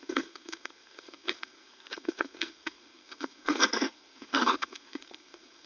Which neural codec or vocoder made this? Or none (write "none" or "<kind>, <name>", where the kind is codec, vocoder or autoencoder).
codec, SNAC